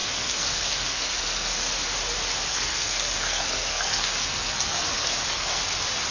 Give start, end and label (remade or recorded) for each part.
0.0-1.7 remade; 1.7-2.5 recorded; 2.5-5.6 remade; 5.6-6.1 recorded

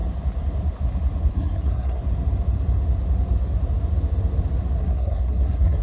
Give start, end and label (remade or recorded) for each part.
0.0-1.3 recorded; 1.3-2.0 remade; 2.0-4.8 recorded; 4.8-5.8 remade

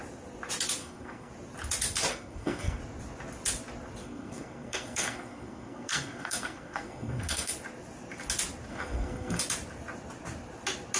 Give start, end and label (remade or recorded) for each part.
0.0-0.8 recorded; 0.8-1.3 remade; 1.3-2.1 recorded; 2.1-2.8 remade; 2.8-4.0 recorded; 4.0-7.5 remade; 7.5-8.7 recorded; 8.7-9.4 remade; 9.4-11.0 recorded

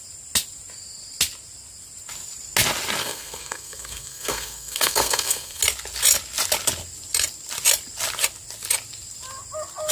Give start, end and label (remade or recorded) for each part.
0.0-3.0 recorded; 3.0-5.6 remade; 5.6-9.9 recorded